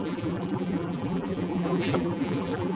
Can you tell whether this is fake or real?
fake